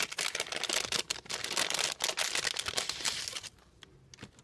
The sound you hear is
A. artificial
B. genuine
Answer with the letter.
B